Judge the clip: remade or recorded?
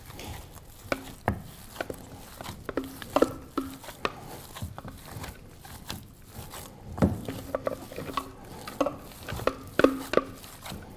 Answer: recorded